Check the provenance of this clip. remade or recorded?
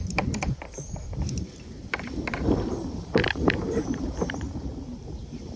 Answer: remade